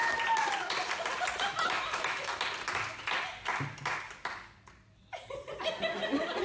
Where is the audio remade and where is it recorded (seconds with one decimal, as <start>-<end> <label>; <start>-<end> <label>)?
0.0-1.5 recorded; 1.5-2.3 remade; 2.3-6.4 recorded